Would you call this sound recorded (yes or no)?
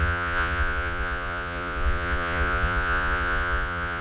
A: no